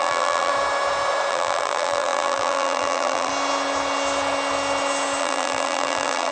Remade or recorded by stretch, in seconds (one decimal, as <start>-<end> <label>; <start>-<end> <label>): 0.0-0.5 remade; 0.5-1.3 recorded; 1.3-3.3 remade; 3.3-5.2 recorded; 5.2-6.3 remade